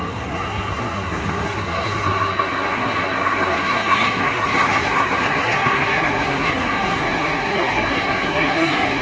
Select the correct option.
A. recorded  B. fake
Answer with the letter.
B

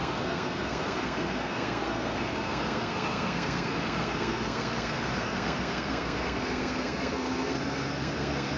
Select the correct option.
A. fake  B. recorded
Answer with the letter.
A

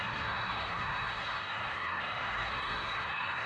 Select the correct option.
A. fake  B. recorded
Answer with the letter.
A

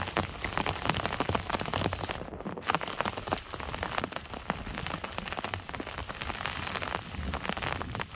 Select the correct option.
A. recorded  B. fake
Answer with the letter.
A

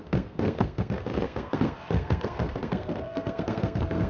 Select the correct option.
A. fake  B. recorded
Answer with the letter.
A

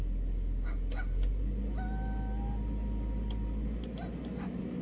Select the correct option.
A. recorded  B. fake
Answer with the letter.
A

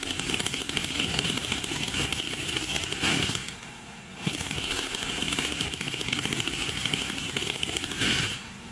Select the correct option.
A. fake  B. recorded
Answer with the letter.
A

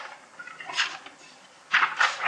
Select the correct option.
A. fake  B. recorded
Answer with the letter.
B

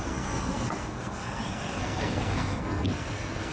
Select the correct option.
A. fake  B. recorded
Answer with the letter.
A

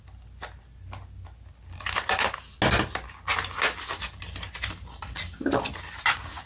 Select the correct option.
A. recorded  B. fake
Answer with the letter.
A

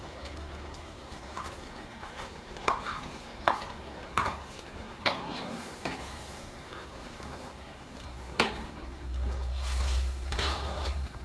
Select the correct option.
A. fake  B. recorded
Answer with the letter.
A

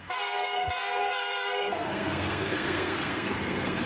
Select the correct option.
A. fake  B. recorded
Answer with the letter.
A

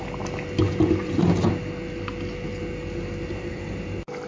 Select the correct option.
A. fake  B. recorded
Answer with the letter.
B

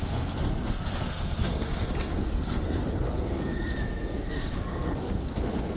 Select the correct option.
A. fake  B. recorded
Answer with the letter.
A